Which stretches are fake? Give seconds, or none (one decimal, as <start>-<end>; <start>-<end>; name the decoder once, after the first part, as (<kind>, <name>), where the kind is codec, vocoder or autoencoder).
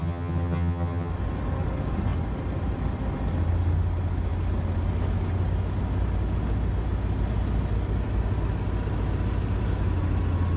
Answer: 0.0-1.1 (vocoder, HiFi-GAN)